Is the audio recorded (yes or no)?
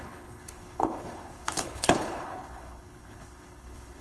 no